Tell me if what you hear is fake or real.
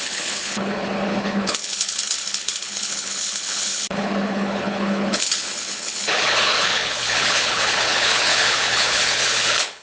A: fake